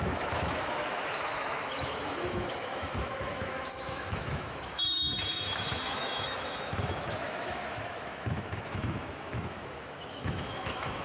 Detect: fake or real fake